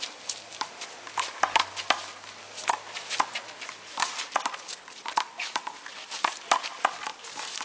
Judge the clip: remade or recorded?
recorded